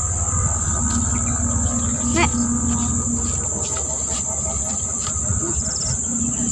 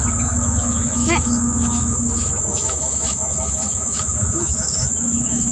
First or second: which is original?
first